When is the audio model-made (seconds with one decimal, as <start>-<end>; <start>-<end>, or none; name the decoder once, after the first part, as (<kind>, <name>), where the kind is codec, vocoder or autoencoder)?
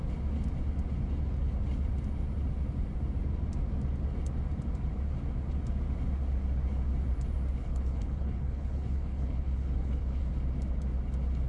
7.6-10.3 (codec, HILCodec)